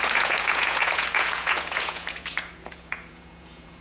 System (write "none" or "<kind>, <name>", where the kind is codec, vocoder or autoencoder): vocoder, Vocos